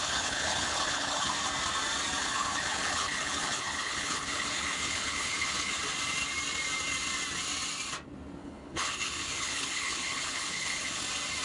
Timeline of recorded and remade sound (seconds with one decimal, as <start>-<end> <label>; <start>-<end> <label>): 0.0-1.3 remade; 1.3-2.2 recorded; 2.2-5.7 remade; 5.7-8.4 recorded; 8.4-11.0 remade; 11.0-11.4 recorded